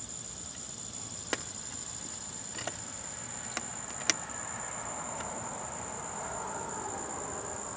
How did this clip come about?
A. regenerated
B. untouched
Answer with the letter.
B